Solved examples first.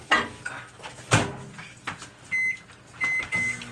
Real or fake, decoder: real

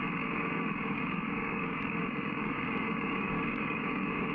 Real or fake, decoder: fake, codec, DAC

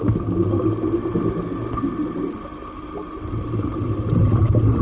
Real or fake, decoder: real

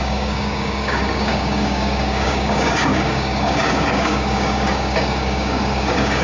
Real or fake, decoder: fake, codec, DAC